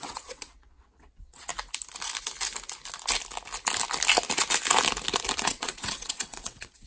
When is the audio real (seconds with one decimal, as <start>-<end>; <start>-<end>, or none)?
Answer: 1.5-5.4